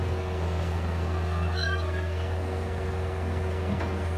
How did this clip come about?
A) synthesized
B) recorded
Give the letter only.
A